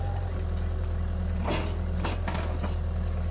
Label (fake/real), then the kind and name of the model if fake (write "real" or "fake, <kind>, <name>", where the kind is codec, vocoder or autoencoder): real